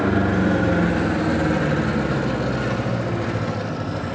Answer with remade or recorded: recorded